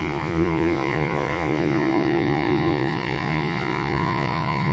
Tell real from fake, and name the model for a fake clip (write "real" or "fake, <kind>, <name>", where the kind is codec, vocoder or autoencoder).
fake, vocoder, Vocos